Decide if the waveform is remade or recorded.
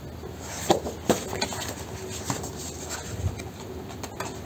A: recorded